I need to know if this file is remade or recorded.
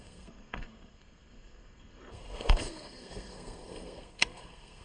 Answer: remade